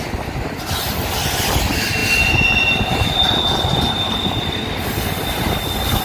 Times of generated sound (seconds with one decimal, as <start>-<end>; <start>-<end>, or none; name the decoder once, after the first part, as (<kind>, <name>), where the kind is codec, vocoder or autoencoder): none